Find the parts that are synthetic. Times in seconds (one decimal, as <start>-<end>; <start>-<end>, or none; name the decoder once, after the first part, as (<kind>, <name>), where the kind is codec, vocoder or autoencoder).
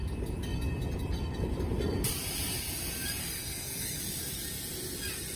3.2-4.0 (codec, SNAC)